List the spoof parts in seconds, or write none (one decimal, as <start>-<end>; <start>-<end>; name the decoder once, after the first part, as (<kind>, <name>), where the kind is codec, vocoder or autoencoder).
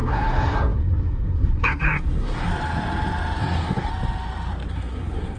0.0-2.5 (codec, SNAC); 3.4-3.9; 4.7-5.4